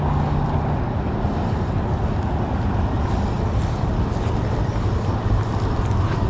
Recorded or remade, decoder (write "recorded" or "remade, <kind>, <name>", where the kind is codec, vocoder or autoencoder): recorded